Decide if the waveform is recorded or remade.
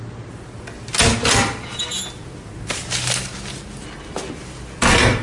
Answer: recorded